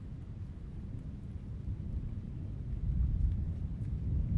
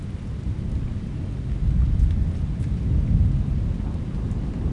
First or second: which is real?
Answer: second